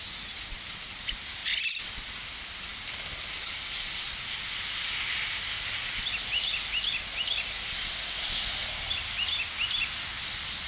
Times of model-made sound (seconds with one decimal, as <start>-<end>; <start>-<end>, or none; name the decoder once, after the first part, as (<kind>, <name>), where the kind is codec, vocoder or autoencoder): none